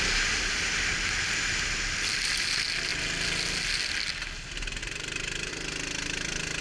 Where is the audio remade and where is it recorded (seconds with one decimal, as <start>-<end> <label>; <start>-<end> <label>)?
0.0-4.8 recorded; 4.8-5.5 remade; 5.5-6.6 recorded